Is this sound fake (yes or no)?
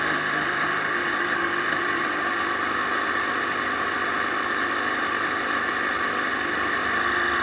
yes